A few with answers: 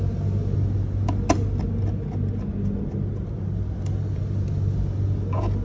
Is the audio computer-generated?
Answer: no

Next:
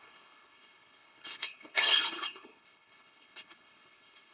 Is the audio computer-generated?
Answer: yes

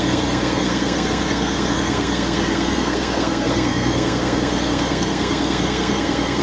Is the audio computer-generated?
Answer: yes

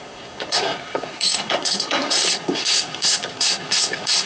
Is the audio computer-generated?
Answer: yes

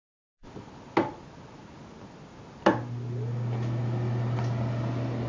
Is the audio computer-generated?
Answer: no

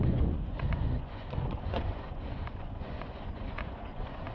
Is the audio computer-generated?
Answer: yes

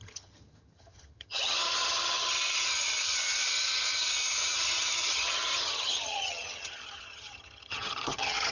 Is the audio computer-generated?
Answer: yes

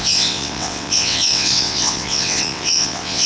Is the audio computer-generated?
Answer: yes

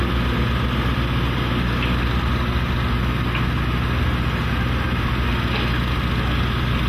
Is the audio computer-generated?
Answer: no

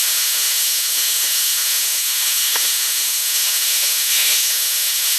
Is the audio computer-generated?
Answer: yes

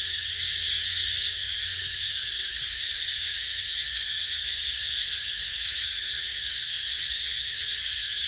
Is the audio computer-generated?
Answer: yes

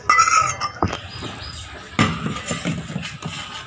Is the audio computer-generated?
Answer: no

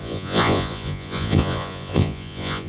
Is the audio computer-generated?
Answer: yes